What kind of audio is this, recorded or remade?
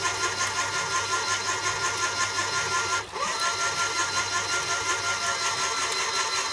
recorded